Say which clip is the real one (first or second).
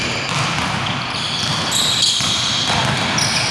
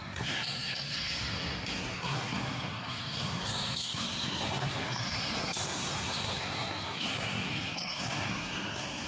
first